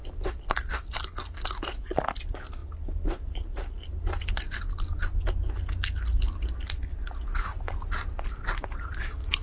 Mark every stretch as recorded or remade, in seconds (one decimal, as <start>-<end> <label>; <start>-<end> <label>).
0.0-9.4 recorded